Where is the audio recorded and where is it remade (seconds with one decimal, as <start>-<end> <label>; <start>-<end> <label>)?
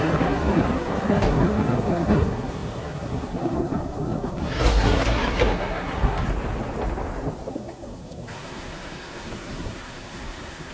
0.0-6.3 remade; 6.3-7.5 recorded; 7.5-10.7 remade